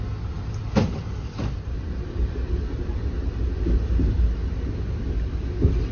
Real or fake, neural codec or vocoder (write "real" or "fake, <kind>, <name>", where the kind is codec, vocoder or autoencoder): real